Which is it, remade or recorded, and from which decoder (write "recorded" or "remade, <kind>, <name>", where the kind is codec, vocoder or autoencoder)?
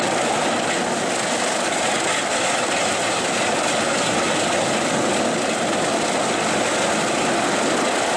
recorded